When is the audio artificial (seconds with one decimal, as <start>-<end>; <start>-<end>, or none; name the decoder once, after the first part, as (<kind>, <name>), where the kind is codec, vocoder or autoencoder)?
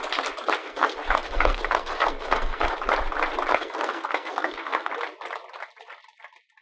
0.6-2.7 (codec, SNAC); 3.5-4.9